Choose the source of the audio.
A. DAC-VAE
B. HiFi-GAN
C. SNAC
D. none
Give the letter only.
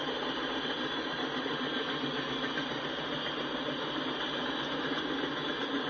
D